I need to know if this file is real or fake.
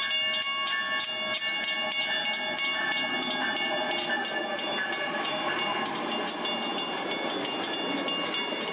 real